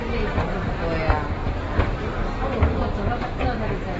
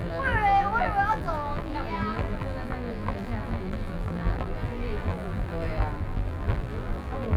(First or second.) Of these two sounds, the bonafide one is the first